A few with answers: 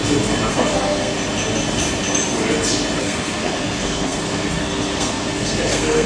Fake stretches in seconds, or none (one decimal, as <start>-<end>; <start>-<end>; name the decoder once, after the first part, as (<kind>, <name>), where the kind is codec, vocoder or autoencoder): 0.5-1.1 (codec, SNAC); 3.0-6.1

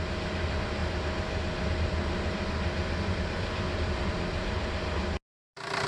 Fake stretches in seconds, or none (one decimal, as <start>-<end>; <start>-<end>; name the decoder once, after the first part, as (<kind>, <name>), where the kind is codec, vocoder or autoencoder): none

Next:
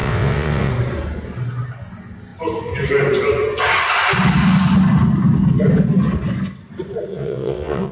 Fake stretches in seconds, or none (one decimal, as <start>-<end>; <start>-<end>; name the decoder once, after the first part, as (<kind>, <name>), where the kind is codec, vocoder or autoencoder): 0.0-0.7 (vocoder, WaveNeXt); 7.1-7.9

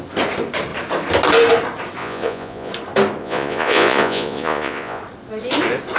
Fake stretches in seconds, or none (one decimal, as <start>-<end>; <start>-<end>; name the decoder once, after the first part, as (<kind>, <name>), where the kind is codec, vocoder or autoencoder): 2.0-2.7 (vocoder, Vocos); 3.2-5.0